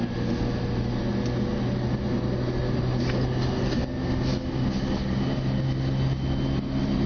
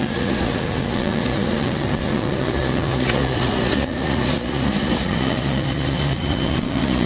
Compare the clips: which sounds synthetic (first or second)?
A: second